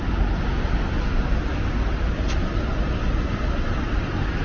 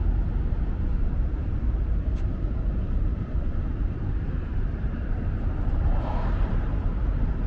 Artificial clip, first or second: second